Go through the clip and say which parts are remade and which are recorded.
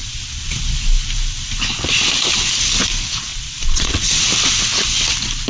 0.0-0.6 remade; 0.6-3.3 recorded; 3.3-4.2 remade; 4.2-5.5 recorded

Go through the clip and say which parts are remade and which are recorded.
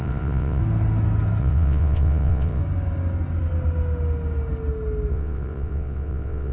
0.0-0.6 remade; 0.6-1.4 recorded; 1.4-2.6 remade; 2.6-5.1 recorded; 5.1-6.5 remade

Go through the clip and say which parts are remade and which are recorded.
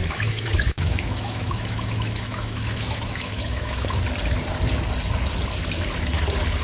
0.0-4.0 remade; 4.0-6.6 recorded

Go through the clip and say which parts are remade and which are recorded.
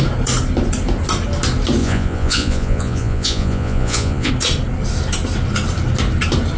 0.0-1.8 recorded; 1.8-4.3 remade; 4.3-6.6 recorded